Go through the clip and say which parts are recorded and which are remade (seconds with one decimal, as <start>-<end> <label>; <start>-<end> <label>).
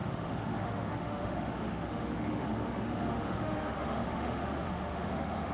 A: 0.0-5.5 remade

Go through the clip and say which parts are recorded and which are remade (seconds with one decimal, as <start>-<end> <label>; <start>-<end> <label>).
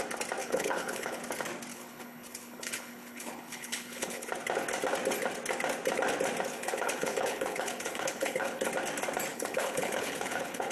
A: 0.0-0.4 recorded; 0.4-1.2 remade; 1.2-1.7 recorded; 1.7-4.3 remade; 4.3-6.5 recorded; 6.5-8.7 remade; 8.7-9.3 recorded; 9.3-10.7 remade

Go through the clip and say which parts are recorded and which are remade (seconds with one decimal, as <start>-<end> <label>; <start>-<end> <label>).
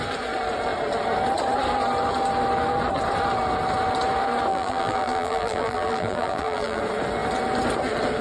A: 0.0-4.5 recorded; 4.5-6.8 remade; 6.8-8.2 recorded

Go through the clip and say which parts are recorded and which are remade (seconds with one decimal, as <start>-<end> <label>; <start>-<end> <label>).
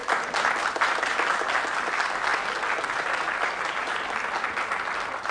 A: 0.0-5.3 recorded